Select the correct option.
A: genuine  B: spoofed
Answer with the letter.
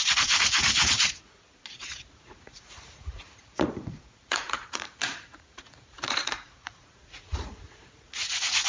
B